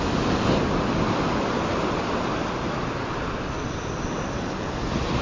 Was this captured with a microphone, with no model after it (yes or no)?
yes